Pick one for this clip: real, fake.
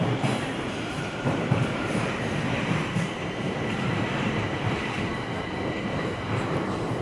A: fake